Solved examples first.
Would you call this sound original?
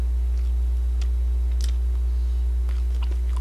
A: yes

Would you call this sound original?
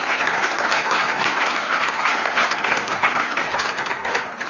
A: no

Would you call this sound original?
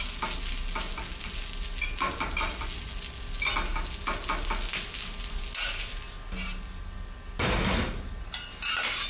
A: yes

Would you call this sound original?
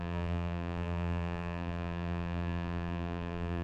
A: no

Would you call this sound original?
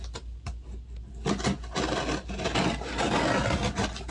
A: yes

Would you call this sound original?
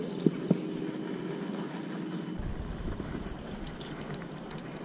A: yes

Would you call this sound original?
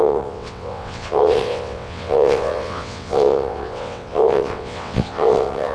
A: no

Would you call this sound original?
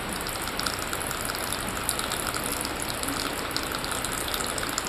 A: yes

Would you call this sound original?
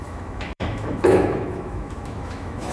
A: no